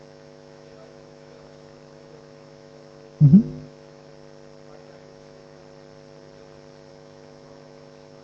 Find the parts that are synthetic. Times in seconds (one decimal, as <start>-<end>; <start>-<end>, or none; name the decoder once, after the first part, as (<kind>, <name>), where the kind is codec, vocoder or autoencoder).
0.0-4.1 (autoencoder, DAC-VAE); 4.8-5.6; 6.9-8.2

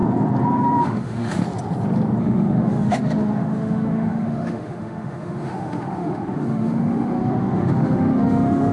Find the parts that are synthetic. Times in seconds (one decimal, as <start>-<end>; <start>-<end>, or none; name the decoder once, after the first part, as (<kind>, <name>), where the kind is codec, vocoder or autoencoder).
0.8-1.4 (autoencoder, DAC-VAE); 2.2-8.7

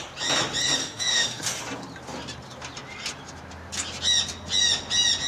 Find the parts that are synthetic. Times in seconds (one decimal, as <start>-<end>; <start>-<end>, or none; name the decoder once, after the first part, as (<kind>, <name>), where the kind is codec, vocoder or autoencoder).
0.8-1.4 (autoencoder, DAC-VAE)

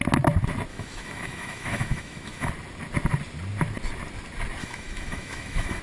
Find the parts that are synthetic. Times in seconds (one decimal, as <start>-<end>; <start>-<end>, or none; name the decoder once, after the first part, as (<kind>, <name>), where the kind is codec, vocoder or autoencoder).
0.7-2.5 (autoencoder, DAC-VAE); 4.6-5.8

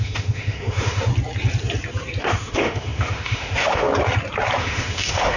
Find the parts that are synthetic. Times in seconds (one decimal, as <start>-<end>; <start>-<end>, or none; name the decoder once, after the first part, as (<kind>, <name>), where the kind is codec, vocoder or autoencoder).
0.0-1.1 (autoencoder, DAC-VAE); 2.2-3.9; 4.6-5.4